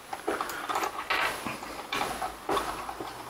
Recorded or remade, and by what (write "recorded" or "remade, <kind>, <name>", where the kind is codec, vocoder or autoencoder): recorded